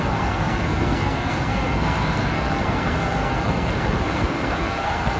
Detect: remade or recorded remade